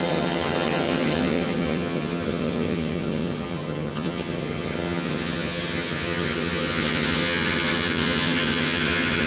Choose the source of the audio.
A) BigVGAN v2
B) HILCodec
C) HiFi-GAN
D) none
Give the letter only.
C